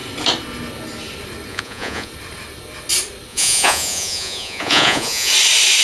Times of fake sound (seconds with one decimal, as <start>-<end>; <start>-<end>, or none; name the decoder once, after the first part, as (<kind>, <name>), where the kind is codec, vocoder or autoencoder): 1.5-2.1 (vocoder, Vocos); 3.3-5.3